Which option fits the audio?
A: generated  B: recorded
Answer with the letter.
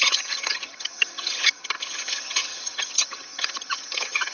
A